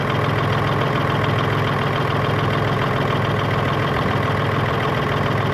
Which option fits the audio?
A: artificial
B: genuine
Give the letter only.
B